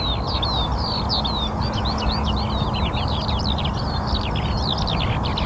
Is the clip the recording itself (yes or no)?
yes